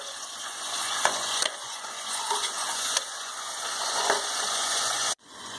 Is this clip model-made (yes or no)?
yes